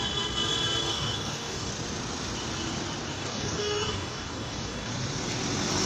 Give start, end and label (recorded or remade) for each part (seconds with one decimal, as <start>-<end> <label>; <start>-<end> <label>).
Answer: 0.0-0.9 recorded; 0.9-1.7 remade; 1.7-3.1 recorded; 3.1-4.9 remade; 4.9-5.9 recorded